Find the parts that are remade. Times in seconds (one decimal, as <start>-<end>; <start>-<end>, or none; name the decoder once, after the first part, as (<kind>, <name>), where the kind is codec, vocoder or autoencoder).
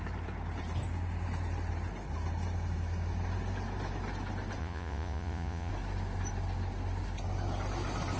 4.6-5.7 (vocoder, Vocos)